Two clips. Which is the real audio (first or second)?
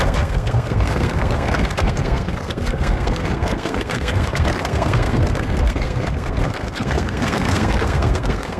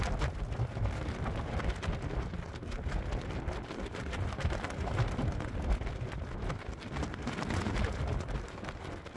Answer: second